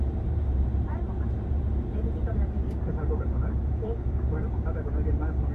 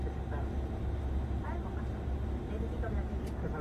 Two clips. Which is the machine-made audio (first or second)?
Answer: first